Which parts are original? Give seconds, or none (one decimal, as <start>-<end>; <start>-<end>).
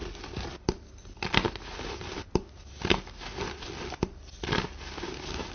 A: 0.0-5.5